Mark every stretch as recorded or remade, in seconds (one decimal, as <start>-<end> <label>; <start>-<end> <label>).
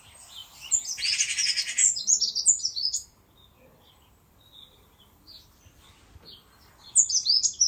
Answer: 0.0-7.7 recorded